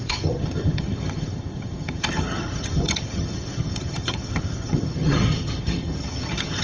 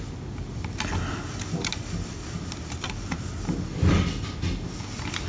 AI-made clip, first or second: first